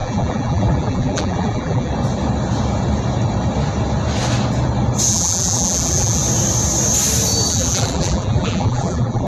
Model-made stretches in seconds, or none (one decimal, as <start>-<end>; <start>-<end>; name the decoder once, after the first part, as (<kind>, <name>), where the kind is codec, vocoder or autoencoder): 0.0-1.9 (vocoder, BigVGAN v2); 5.1-6.2; 7.5-9.3